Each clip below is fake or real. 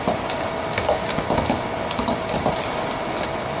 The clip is real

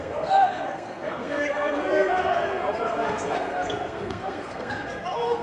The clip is fake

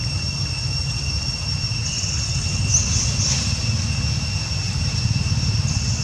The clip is real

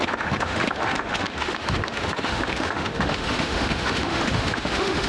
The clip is fake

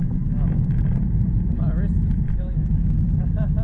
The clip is real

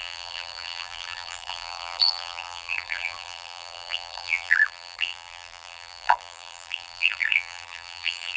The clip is fake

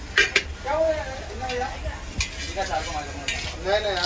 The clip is real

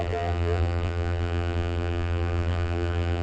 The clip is fake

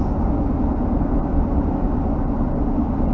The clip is real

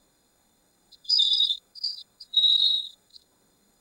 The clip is fake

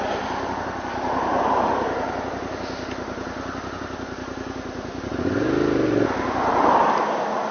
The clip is real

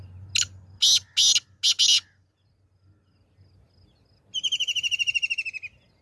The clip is real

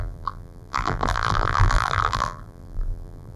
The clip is fake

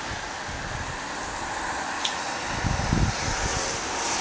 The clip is real